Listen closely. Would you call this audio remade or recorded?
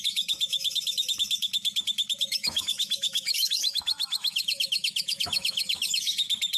remade